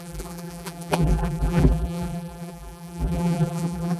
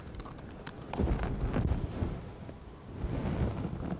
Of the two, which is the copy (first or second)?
first